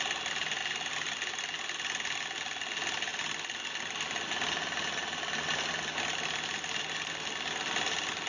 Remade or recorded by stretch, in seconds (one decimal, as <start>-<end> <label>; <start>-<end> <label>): 0.0-8.3 recorded

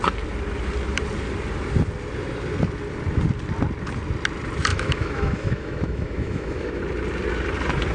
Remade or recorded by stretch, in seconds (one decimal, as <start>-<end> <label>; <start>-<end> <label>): 0.0-4.7 recorded; 4.7-6.8 remade; 6.8-7.9 recorded

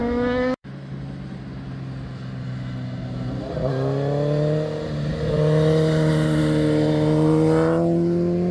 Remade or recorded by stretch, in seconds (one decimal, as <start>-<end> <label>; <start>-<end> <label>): 0.0-0.7 remade; 0.7-8.5 recorded

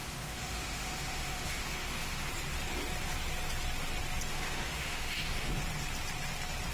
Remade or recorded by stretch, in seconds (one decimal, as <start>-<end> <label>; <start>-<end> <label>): 0.0-2.3 remade; 2.3-4.3 recorded; 4.3-5.5 remade; 5.5-6.7 recorded

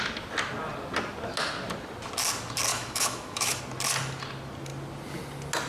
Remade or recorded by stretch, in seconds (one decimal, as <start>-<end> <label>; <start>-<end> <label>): 0.0-2.7 recorded; 2.7-3.6 remade; 3.6-5.7 recorded

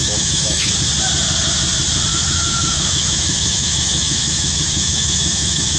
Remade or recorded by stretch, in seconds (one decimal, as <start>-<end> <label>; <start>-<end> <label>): 0.0-0.7 remade; 0.7-2.1 recorded; 2.1-5.8 remade

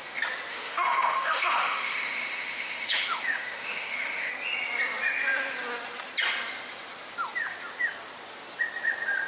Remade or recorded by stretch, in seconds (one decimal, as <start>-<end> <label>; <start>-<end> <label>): 0.0-0.5 recorded; 0.5-4.3 remade; 4.3-9.3 recorded

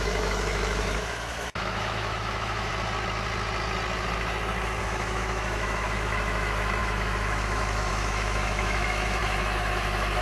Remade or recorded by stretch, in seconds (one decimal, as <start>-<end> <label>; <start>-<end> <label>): 0.0-2.7 remade; 2.7-4.8 recorded; 4.8-10.2 remade